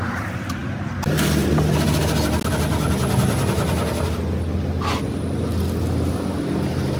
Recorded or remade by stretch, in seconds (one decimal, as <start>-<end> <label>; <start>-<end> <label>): 0.0-7.0 recorded